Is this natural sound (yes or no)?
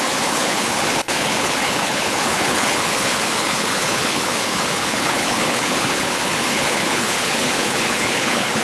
no